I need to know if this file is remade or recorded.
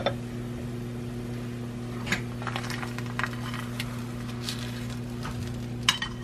recorded